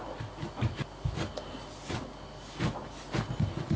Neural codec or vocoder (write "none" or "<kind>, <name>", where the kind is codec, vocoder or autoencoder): none